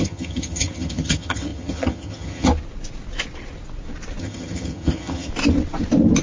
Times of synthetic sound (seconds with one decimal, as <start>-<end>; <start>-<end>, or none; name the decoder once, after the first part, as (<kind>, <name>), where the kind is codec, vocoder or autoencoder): 0.0-2.5 (vocoder, HiFi-GAN); 4.2-5.3